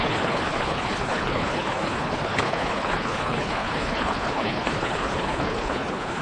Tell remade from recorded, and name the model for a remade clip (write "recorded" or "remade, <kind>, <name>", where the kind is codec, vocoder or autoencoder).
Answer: remade, codec, HILCodec